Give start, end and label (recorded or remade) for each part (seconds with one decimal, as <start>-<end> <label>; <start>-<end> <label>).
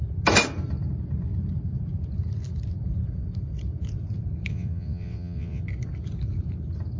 0.0-4.5 recorded; 4.5-5.6 remade; 5.6-7.0 recorded